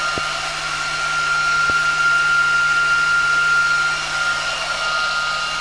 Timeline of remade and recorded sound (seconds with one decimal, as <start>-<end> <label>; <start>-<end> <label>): 0.0-5.6 recorded